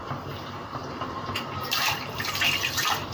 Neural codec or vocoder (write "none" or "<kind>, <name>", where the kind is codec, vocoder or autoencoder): vocoder, BigVGAN v2